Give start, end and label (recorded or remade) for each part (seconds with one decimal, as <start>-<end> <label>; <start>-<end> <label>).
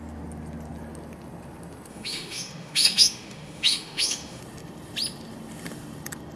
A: 0.0-1.9 recorded; 1.9-4.4 remade; 4.4-6.4 recorded